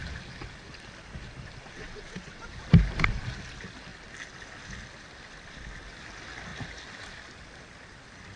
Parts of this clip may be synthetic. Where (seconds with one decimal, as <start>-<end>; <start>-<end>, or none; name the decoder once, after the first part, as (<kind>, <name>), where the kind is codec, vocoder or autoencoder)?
1.7-2.5 (vocoder, WaveNeXt)